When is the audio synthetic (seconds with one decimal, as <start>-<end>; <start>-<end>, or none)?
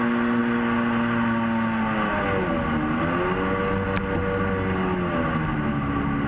none